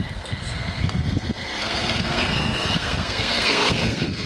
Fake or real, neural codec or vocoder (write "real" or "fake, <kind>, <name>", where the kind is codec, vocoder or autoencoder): fake, codec, SNAC